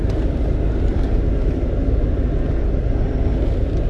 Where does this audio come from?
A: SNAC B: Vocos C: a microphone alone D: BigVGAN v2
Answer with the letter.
C